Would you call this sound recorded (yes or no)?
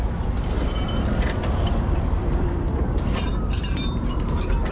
no